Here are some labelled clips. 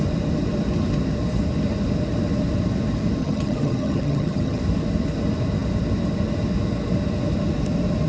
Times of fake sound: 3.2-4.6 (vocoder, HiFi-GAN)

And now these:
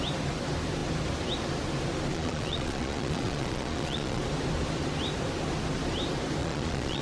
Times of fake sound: 2.1-4.2 (vocoder, Vocos); 6.4-7.0

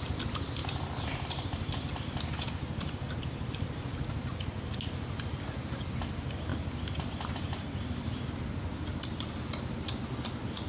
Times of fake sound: none

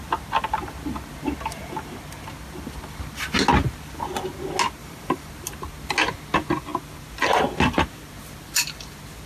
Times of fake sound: 4.8-5.3 (vocoder, BigVGAN v2)

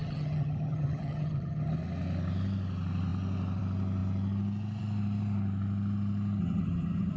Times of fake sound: 0.0-1.7 (vocoder, HiFi-GAN); 6.4-7.2

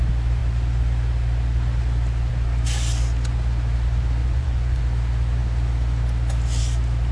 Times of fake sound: 4.2-4.8 (vocoder, Vocos)